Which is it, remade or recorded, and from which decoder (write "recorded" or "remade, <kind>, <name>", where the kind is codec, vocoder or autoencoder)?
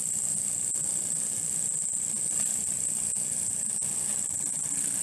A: recorded